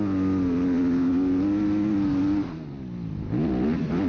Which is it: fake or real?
real